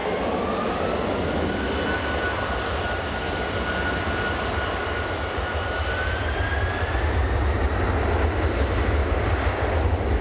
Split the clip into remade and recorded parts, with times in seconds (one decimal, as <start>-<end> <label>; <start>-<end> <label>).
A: 0.0-10.2 recorded